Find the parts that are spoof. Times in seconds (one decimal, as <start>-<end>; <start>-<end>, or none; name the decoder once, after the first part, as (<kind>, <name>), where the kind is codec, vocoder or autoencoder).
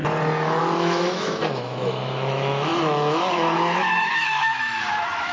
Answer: 0.6-5.3 (autoencoder, DAC-VAE)